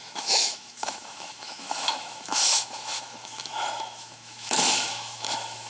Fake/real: fake